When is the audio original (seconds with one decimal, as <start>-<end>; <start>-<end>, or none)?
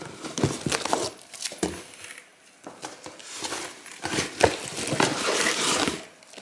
2.3-3.0